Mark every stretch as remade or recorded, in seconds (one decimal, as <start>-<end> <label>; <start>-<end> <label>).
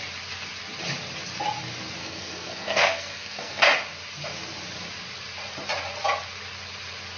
0.0-2.0 recorded; 2.0-3.6 remade; 3.6-7.2 recorded